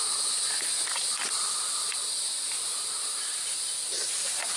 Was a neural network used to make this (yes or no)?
no